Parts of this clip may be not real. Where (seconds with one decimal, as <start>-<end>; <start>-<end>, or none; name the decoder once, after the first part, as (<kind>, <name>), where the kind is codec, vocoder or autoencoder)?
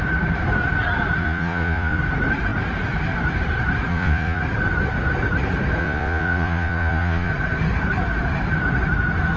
1.2-2.0 (vocoder, Vocos); 3.9-4.4; 5.8-7.3